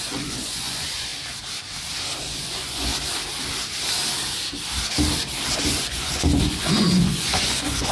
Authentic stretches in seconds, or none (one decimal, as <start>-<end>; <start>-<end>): 1.1-2.2; 2.9-5.8